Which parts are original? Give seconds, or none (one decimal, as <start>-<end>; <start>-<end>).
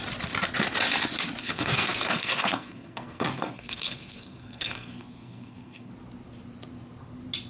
0.0-1.4; 5.9-7.5